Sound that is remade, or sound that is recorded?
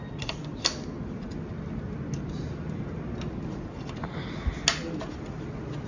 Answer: recorded